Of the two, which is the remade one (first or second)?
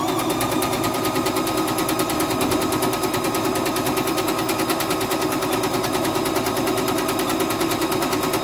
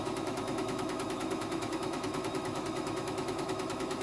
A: second